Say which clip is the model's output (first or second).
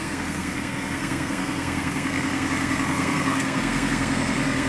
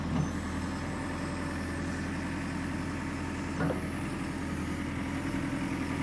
first